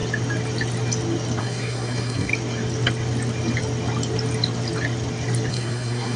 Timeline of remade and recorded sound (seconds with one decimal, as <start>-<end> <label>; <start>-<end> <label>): 0.0-1.4 recorded; 1.4-2.3 remade; 2.3-5.5 recorded; 5.5-6.2 remade